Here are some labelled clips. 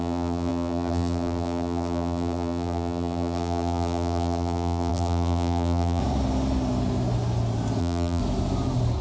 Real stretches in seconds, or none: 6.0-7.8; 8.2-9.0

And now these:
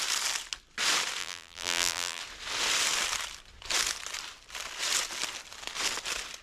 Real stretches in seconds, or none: 0.0-1.2; 2.2-6.4

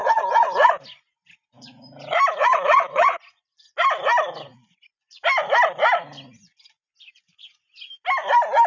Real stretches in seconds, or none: 0.7-2.4; 3.2-8.7

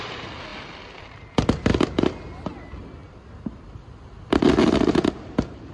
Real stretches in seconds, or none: 0.0-0.5; 1.1-5.7